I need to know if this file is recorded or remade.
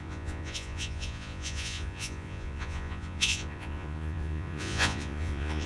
remade